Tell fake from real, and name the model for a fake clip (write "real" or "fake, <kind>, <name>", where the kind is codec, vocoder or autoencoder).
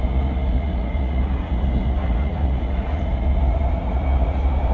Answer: fake, vocoder, Vocos